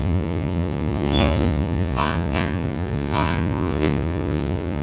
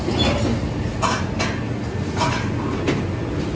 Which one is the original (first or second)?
second